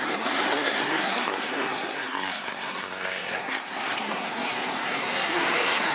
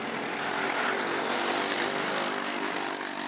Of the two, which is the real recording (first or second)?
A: second